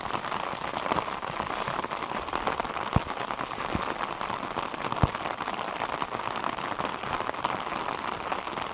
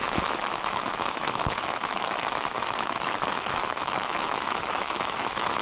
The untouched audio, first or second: first